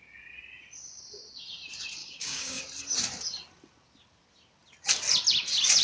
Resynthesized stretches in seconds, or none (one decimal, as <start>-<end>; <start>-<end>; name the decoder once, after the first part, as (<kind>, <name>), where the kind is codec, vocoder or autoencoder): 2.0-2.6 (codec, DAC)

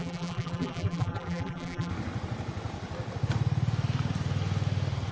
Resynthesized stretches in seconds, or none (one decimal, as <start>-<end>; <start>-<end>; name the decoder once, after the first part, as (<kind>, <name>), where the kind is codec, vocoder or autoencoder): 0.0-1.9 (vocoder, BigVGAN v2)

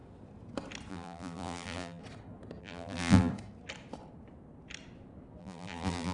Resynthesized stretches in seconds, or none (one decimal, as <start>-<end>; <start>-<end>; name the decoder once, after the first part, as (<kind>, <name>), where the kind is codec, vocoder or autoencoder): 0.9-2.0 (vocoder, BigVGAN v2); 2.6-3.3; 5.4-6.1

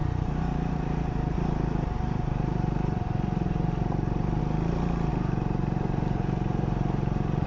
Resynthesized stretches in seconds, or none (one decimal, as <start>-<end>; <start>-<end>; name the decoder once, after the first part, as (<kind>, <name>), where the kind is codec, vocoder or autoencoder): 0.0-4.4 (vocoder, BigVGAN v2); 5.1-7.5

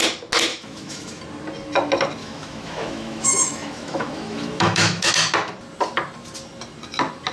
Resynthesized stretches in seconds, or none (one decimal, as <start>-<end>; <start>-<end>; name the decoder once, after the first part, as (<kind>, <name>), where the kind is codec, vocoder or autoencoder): 0.5-1.2 (autoencoder, DAC-VAE); 2.2-5.1

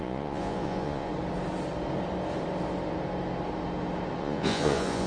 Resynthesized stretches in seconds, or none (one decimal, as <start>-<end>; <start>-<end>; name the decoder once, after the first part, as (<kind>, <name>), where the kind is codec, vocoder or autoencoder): 0.0-1.1 (vocoder, Vocos); 4.2-5.1

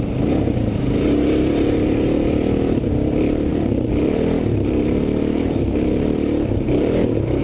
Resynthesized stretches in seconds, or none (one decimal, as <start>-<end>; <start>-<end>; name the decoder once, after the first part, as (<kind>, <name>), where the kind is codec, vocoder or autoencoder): 3.5-7.4 (vocoder, BigVGAN v2)

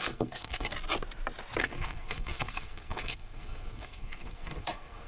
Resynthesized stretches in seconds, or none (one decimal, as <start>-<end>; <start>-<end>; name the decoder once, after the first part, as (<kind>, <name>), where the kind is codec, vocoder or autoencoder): 0.0-0.7 (codec, SNAC); 1.6-5.1